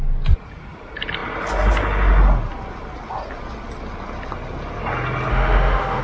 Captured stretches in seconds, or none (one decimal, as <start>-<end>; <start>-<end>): 0.0-5.3